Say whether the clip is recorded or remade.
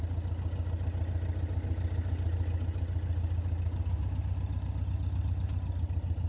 recorded